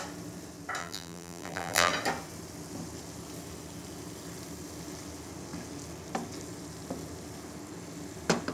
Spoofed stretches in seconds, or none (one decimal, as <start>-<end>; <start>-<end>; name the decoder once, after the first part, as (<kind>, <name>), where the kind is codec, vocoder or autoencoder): 0.8-1.9 (vocoder, BigVGAN v2)